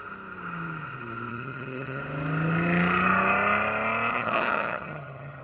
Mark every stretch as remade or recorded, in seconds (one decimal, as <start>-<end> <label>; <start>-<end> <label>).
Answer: 0.0-1.3 recorded; 1.3-2.0 remade; 2.0-4.1 recorded; 4.1-5.4 remade